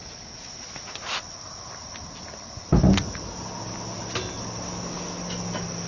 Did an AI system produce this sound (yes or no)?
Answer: no